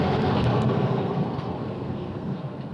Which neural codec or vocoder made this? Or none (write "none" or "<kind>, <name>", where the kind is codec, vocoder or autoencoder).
codec, SNAC